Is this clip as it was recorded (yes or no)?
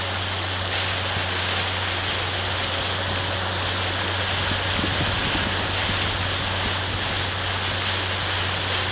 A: yes